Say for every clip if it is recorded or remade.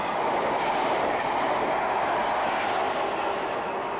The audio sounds recorded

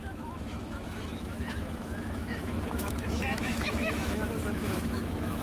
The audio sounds remade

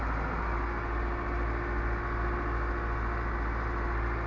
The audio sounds recorded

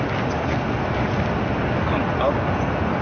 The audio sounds recorded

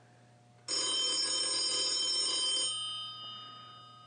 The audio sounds recorded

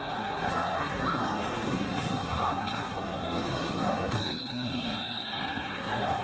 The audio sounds remade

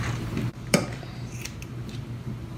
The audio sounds remade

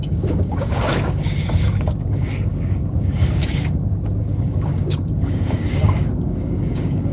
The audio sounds remade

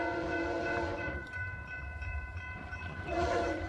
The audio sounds remade